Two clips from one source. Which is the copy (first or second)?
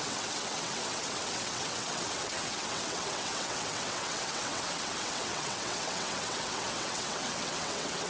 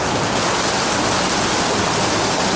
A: first